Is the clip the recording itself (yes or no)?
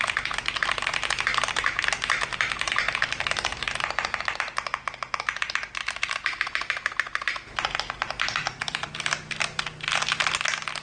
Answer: yes